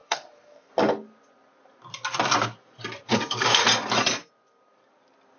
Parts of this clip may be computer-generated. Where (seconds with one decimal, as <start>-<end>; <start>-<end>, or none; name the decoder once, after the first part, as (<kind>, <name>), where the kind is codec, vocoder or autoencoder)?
0.0-0.7 (codec, SNAC); 3.1-3.6